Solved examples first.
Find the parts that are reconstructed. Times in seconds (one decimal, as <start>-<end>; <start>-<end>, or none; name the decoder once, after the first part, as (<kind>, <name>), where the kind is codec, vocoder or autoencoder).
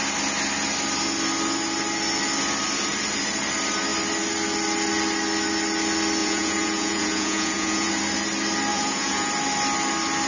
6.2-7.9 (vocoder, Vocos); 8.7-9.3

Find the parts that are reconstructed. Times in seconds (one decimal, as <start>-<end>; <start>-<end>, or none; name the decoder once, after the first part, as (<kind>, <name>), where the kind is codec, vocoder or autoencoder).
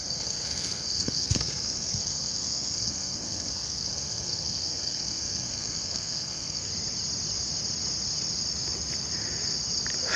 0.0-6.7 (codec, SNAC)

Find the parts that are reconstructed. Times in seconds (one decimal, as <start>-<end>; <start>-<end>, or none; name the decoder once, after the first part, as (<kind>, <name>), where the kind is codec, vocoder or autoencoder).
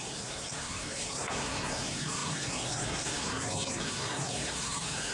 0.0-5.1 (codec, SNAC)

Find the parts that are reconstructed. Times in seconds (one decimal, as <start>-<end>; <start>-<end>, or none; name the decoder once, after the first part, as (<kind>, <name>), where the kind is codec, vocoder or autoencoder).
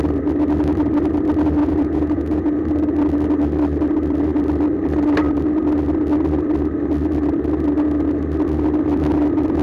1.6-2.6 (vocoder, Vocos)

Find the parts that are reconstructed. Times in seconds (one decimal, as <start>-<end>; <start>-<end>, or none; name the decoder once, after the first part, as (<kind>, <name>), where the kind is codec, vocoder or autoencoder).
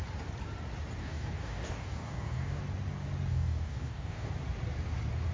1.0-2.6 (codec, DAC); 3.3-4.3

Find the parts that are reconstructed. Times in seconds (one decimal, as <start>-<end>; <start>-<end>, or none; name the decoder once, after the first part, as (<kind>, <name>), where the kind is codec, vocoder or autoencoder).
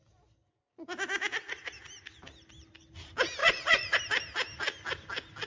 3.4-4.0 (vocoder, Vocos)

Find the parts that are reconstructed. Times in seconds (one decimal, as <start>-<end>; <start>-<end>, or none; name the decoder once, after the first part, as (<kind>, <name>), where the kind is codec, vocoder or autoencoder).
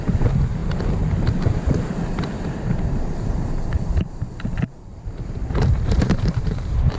5.4-7.0 (vocoder, BigVGAN v2)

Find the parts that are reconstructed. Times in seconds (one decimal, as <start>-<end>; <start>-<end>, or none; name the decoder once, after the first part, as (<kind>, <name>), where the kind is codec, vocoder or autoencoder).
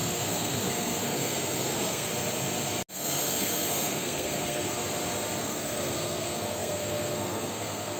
0.0-2.1 (codec, SNAC); 2.9-4.8; 5.4-8.0